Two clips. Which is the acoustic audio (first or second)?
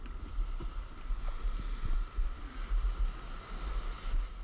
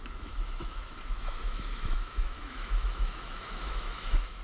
first